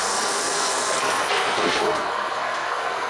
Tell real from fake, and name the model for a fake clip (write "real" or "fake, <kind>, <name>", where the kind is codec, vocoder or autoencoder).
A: fake, codec, SNAC